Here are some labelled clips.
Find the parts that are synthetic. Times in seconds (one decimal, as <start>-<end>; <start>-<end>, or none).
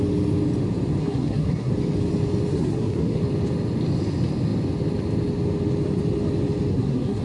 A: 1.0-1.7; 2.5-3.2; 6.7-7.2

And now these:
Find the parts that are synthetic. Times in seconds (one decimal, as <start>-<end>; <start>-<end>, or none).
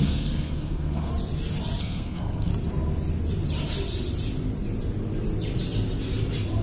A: 0.0-1.1; 1.8-2.5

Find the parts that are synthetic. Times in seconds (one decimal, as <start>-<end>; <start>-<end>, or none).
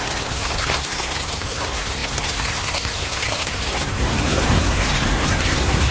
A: 0.0-5.9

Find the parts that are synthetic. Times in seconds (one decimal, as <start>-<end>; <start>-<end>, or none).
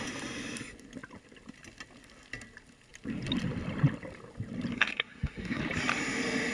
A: 4.7-5.6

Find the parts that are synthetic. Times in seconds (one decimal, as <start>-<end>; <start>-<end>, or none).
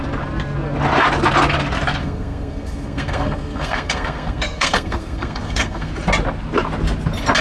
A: 2.0-5.9